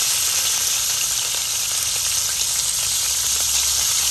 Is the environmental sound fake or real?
real